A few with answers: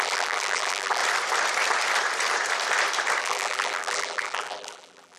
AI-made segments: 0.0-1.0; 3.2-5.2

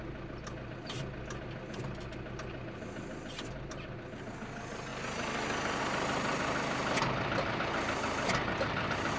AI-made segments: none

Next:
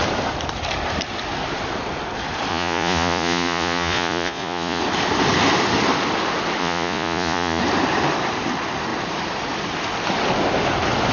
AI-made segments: 2.5-4.8; 6.6-7.6

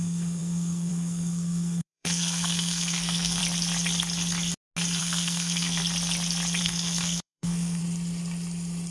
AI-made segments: 0.0-3.4; 5.0-5.8; 6.6-7.8